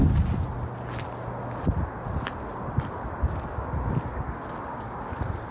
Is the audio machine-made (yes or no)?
no